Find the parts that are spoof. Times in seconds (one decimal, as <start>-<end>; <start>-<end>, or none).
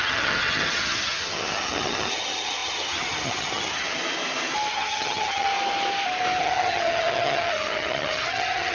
0.0-4.0; 4.7-5.5; 6.4-8.7